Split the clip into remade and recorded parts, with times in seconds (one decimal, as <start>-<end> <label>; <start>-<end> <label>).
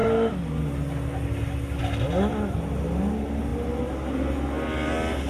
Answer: 0.0-5.3 recorded